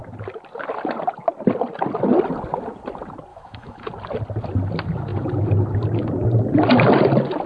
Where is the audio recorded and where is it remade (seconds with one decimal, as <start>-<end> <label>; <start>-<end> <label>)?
0.0-3.3 recorded; 3.3-3.9 remade; 3.9-7.5 recorded